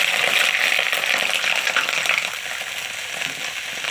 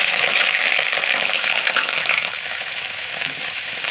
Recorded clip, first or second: first